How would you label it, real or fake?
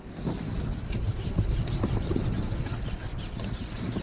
real